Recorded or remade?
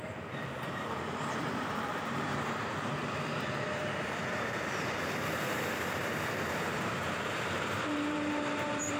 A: remade